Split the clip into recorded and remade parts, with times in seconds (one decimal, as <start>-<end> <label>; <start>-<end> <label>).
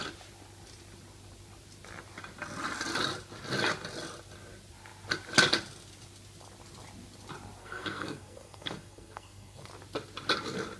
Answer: 0.0-7.6 recorded; 7.6-9.7 remade; 9.7-10.8 recorded